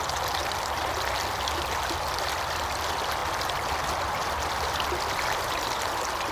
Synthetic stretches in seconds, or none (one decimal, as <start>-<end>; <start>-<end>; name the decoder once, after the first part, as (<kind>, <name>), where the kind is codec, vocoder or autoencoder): none